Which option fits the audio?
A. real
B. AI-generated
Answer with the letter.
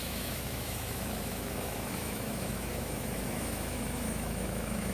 B